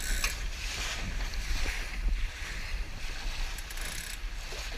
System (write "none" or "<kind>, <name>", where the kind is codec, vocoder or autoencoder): none